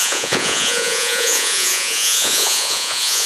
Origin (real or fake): fake